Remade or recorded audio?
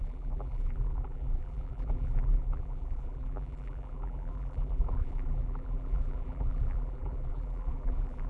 remade